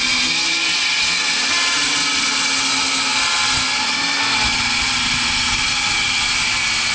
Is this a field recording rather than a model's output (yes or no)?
yes